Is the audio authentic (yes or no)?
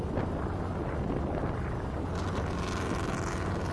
yes